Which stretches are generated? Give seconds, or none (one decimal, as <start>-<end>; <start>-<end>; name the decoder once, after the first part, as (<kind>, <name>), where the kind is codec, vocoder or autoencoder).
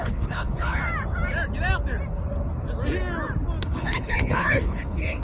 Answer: 0.0-0.8 (codec, HILCodec); 3.6-5.2